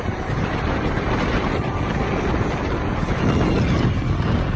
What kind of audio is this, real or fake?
real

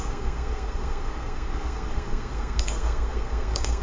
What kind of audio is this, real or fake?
fake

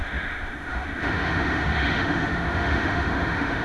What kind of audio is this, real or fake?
fake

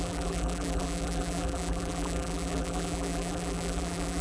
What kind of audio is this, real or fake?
fake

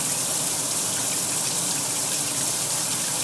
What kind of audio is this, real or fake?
fake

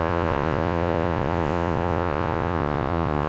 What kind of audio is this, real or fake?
fake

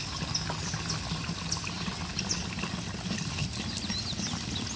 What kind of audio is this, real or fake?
real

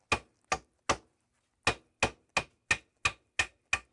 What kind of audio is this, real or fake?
real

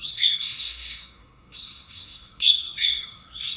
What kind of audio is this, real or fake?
fake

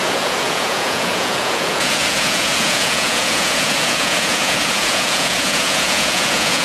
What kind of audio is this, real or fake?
fake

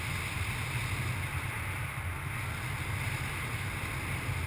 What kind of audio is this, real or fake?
real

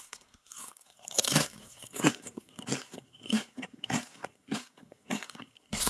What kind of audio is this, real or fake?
fake